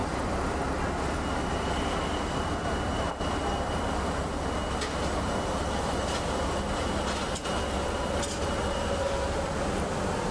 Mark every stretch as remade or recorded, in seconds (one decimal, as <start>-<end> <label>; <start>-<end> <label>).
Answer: 0.0-10.3 recorded